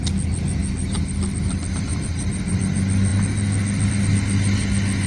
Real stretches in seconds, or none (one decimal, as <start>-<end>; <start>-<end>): 0.0-0.6; 1.1-1.9; 2.6-5.1